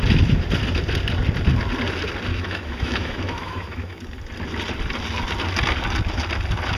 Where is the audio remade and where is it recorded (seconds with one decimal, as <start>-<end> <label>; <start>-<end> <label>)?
0.0-2.3 recorded; 2.3-4.0 remade; 4.0-6.8 recorded